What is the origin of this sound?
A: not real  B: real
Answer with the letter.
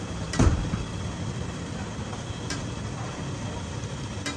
B